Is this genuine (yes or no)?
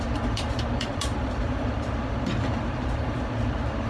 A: no